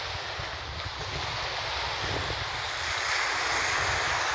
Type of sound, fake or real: real